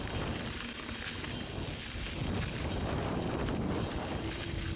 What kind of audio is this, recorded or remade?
recorded